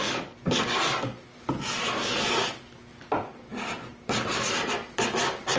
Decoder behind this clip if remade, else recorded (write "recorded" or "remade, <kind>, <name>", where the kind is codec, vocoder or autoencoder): remade, vocoder, BigVGAN v2